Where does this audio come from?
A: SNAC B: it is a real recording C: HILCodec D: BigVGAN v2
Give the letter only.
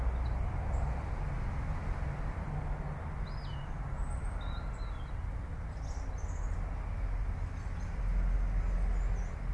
B